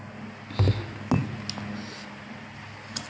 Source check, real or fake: real